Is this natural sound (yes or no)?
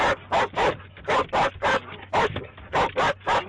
yes